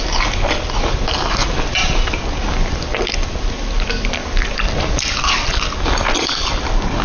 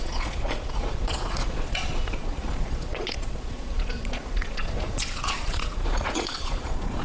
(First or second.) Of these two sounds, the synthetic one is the second